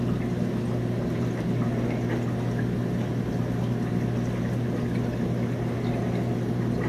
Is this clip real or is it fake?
real